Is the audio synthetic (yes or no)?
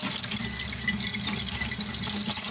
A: no